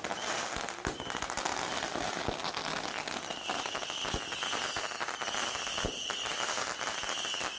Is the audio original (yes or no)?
yes